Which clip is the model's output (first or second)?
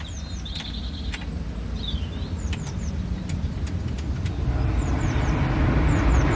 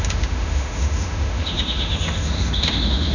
second